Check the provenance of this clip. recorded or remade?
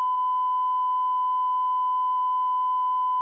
recorded